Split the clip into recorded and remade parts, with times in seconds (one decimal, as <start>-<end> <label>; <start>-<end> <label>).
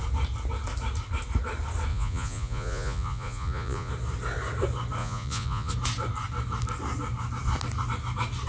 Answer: 0.0-1.9 recorded; 1.9-3.9 remade; 3.9-5.0 recorded; 5.0-5.7 remade; 5.7-8.5 recorded